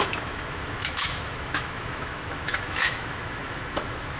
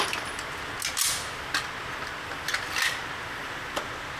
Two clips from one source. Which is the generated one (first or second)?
first